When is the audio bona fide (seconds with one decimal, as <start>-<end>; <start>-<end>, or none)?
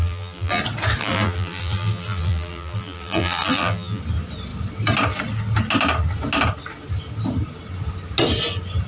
0.6-1.0; 4.0-8.9